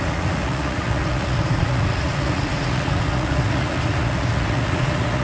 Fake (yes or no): yes